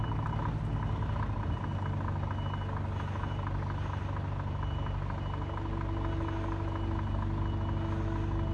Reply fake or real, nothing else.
real